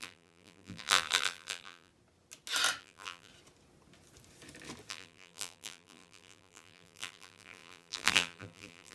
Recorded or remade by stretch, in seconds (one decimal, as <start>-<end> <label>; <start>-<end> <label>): 0.0-1.9 remade; 1.9-2.8 recorded; 2.8-3.3 remade; 3.3-4.9 recorded; 4.9-8.9 remade